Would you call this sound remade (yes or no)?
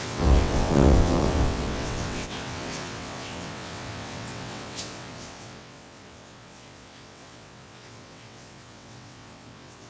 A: yes